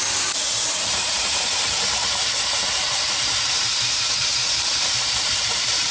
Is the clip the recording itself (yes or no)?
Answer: no